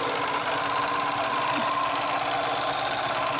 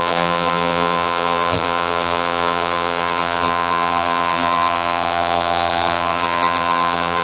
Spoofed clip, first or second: second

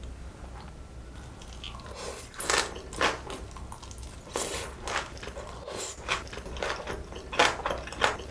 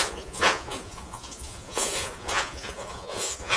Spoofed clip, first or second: second